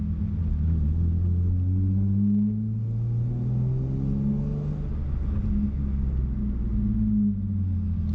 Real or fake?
real